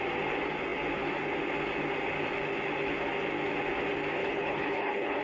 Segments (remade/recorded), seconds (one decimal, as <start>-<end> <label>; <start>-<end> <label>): 0.0-4.2 recorded; 4.2-5.2 remade